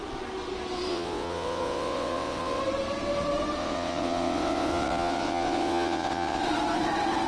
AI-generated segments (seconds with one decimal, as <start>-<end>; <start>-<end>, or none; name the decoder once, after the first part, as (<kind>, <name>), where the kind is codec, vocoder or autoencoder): 0.9-2.6 (vocoder, WaveNeXt); 3.6-6.4